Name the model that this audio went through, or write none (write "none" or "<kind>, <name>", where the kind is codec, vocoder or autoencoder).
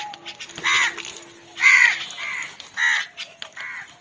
none